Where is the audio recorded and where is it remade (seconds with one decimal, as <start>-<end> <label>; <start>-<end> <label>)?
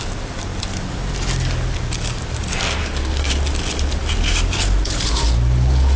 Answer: 0.0-2.8 recorded; 2.8-3.3 remade; 3.3-6.0 recorded